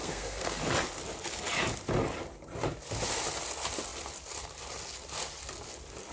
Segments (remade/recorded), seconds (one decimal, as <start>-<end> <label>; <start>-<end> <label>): 0.0-0.6 remade; 0.6-6.1 recorded